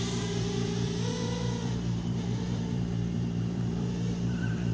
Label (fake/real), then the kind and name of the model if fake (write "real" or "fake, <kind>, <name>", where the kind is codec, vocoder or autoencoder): fake, vocoder, BigVGAN v2